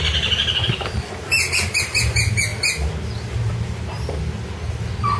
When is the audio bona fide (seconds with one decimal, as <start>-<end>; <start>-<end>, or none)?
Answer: 0.0-5.2